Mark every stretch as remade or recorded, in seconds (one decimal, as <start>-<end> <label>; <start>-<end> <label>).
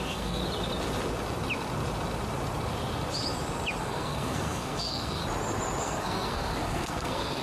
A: 0.0-0.4 remade; 0.4-3.8 recorded; 3.8-5.2 remade; 5.2-5.8 recorded; 5.8-7.4 remade